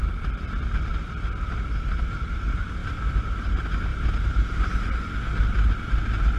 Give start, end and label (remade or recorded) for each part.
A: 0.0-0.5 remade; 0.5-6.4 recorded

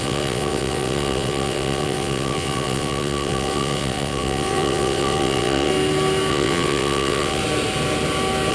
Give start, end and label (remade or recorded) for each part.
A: 0.0-5.7 remade; 5.7-6.3 recorded; 6.3-7.4 remade; 7.4-8.5 recorded

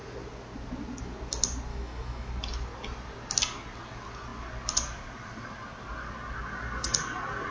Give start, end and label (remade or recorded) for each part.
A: 0.0-1.7 recorded; 1.7-2.3 remade; 2.3-7.5 recorded

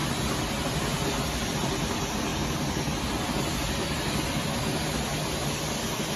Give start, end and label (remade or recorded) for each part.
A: 0.0-6.2 recorded